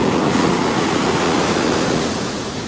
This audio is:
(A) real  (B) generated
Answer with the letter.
B